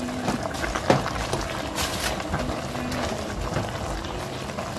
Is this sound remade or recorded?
recorded